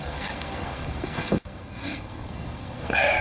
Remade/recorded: remade